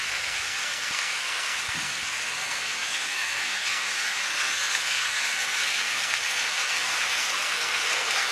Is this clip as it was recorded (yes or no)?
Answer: no